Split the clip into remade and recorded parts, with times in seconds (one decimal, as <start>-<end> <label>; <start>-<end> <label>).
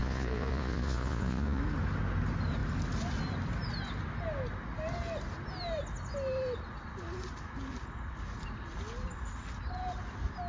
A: 0.0-1.6 remade; 1.6-10.5 recorded